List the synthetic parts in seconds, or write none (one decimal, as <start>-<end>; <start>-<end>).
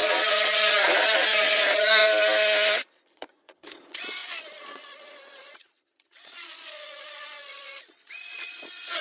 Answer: 0.0-2.0; 3.1-9.0